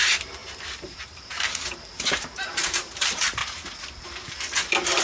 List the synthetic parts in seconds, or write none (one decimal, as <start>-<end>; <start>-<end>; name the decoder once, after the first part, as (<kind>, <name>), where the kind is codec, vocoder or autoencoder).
0.0-3.4 (vocoder, BigVGAN v2)

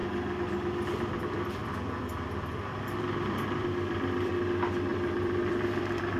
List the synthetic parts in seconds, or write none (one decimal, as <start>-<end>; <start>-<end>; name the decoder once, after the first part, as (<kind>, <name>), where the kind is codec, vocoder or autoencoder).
1.6-4.3 (vocoder, BigVGAN v2); 4.9-6.2

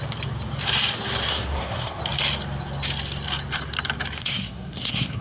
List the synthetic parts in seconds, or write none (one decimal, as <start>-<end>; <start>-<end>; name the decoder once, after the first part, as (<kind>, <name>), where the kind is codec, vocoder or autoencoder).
1.3-2.0 (codec, SNAC); 4.2-5.2

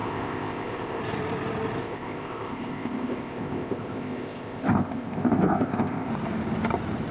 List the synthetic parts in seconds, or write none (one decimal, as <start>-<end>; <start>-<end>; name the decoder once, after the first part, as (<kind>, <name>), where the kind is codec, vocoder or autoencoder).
0.0-1.0 (codec, ZipCodec); 1.8-6.1